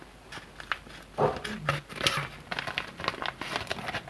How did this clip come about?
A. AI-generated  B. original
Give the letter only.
B